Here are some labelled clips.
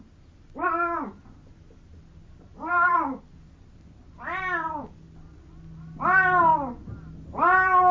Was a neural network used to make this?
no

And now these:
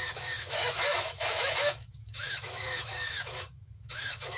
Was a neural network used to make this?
yes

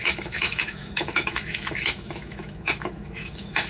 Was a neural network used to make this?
yes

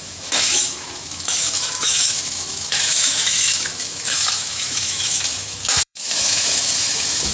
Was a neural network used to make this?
yes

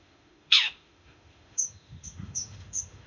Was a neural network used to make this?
yes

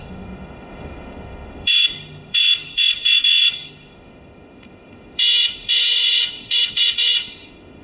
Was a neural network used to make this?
yes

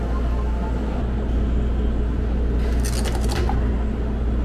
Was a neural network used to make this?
no